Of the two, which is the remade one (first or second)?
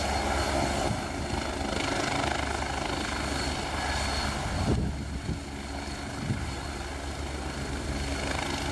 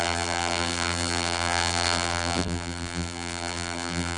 second